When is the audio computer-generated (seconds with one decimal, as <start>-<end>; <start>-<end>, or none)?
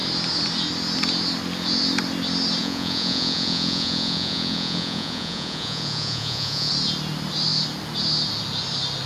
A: 2.6-6.7